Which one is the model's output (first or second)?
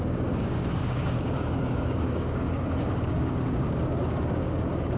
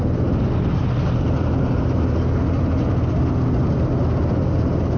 first